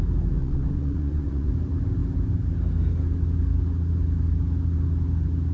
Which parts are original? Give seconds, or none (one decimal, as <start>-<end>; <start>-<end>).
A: 0.0-0.4; 1.5-5.5